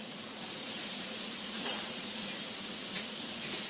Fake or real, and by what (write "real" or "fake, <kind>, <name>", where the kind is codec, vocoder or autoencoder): fake, vocoder, Vocos